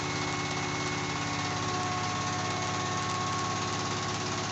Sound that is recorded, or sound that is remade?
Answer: recorded